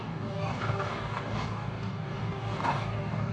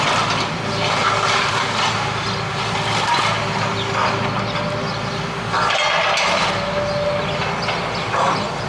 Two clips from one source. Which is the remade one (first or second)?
first